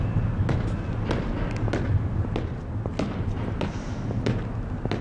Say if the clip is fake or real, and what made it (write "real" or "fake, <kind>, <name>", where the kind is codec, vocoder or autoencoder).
real